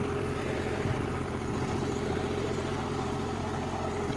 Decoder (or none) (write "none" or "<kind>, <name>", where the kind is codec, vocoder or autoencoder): vocoder, BigVGAN v2